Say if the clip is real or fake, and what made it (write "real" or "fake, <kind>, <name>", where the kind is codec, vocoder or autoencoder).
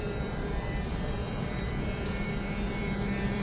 fake, vocoder, BigVGAN v2